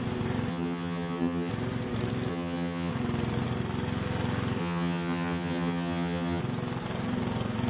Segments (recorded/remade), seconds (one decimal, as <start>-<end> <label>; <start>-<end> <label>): 0.0-0.5 recorded; 0.5-1.5 remade; 1.5-2.3 recorded; 2.3-2.9 remade; 2.9-4.6 recorded; 4.6-6.4 remade; 6.4-7.7 recorded